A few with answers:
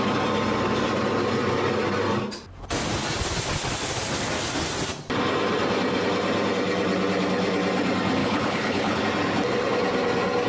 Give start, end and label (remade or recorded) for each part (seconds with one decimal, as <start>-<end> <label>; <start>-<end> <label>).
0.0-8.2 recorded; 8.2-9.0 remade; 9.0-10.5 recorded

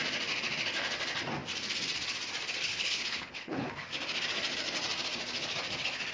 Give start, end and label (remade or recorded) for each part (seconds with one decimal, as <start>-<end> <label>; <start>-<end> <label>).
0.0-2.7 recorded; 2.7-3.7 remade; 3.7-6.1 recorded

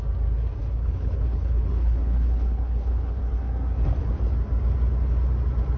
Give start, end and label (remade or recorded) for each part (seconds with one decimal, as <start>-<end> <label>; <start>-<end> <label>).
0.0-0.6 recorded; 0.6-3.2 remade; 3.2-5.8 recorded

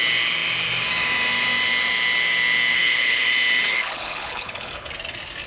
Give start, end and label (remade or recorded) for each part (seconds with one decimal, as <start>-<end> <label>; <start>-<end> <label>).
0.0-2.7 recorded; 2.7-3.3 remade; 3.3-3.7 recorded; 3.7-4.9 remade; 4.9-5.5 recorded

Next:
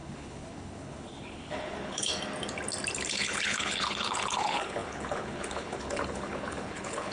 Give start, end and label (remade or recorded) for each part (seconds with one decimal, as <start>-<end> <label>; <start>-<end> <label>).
0.0-2.1 remade; 2.1-3.1 recorded; 3.1-7.1 remade